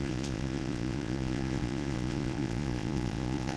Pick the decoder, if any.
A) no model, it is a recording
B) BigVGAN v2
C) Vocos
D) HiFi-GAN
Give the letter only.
C